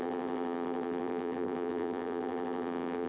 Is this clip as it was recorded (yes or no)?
no